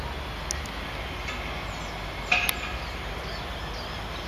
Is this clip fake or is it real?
real